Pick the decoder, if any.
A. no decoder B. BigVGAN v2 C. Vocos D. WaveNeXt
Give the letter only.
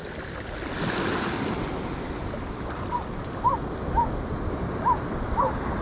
A